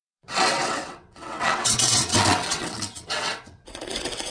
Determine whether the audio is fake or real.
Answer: fake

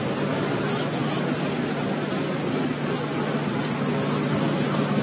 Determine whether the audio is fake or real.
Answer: real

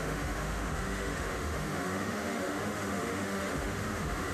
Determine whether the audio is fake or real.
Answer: fake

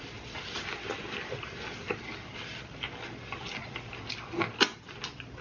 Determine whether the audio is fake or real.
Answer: real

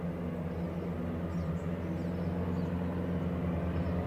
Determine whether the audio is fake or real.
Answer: real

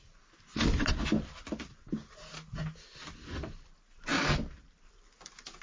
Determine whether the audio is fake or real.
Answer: real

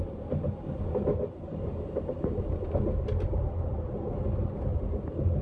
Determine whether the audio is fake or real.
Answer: real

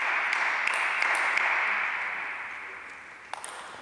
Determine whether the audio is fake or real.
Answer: real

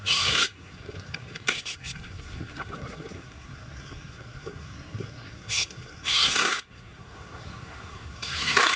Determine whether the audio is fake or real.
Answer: fake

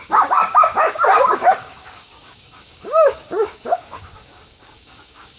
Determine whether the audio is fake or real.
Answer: fake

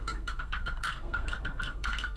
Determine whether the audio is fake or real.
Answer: fake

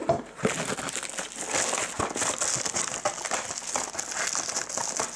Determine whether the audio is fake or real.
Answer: real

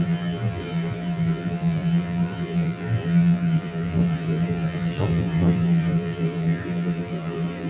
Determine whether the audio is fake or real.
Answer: fake